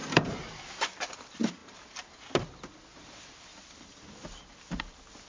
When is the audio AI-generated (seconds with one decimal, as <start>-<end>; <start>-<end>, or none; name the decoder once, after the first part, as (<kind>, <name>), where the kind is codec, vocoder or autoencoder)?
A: 0.0-0.8 (vocoder, BigVGAN v2); 1.6-4.8